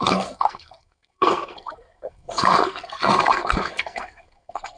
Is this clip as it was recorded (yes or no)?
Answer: no